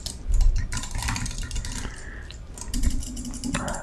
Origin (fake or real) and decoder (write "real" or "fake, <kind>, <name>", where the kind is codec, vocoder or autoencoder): real